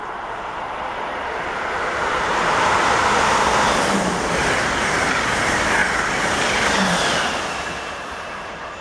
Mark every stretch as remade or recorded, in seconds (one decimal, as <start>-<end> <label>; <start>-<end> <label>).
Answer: 0.0-5.8 remade; 5.8-6.3 recorded; 6.3-8.8 remade